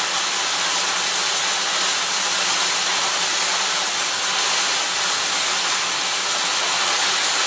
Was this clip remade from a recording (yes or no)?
no